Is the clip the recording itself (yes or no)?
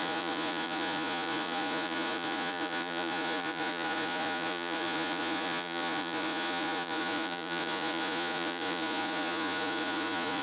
no